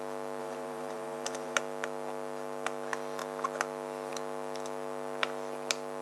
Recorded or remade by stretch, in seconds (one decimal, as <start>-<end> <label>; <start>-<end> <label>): 0.0-0.4 recorded; 0.4-1.6 remade; 1.6-6.0 recorded